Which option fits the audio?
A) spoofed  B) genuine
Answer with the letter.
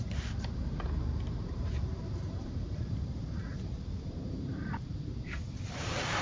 A